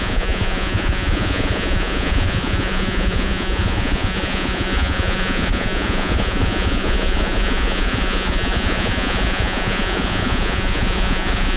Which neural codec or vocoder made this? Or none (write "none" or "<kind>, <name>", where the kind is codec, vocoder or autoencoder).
vocoder, Vocos